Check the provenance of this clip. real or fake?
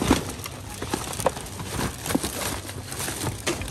real